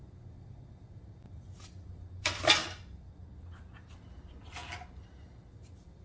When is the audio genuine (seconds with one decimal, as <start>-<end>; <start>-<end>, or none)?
0.0-6.0